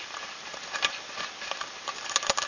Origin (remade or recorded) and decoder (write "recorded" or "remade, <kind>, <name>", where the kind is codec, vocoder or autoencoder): recorded